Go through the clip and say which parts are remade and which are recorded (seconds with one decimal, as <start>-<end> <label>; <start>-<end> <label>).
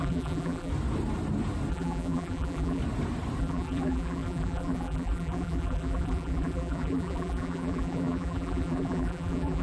0.0-0.7 remade; 0.7-1.7 recorded; 1.7-2.8 remade; 2.8-3.4 recorded; 3.4-9.6 remade